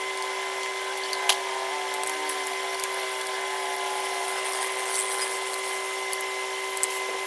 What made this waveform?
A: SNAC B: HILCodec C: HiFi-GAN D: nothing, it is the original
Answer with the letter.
D